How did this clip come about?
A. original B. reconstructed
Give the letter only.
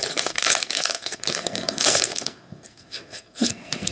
B